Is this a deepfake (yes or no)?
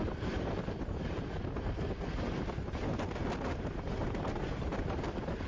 no